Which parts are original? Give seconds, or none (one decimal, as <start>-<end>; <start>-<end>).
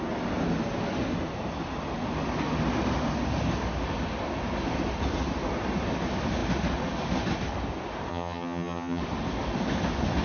0.0-8.1; 9.0-10.2